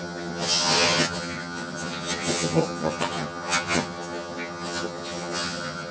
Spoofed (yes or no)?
yes